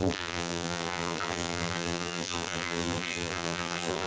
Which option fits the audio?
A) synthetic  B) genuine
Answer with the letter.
A